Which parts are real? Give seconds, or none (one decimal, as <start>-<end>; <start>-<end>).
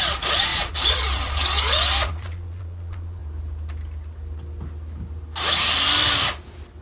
3.2-6.8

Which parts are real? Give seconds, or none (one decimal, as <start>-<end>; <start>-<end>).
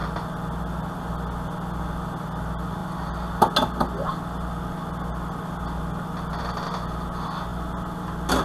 0.0-8.4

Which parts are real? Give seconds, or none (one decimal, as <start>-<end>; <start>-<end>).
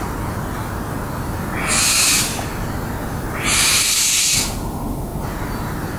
0.0-6.0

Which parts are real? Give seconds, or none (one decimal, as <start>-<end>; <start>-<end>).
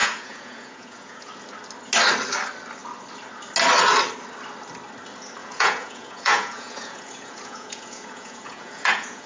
1.3-5.4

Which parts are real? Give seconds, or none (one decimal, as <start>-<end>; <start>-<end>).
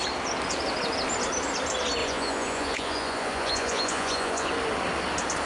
0.0-2.0; 4.5-5.5